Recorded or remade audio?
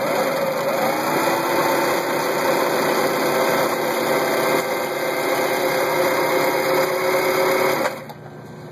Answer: recorded